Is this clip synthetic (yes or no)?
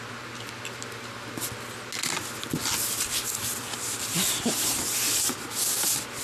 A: no